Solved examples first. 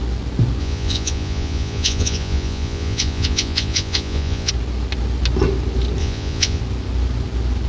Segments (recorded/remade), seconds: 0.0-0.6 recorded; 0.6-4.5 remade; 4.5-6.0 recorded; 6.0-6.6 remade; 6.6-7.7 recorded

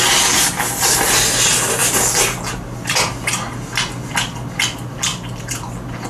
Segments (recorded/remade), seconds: 0.0-6.1 recorded

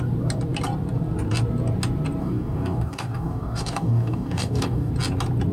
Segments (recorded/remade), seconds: 0.0-2.2 recorded; 2.2-4.9 remade; 4.9-5.5 recorded

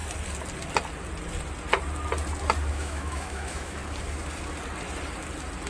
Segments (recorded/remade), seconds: 0.0-2.7 recorded; 2.7-3.8 remade; 3.8-5.7 recorded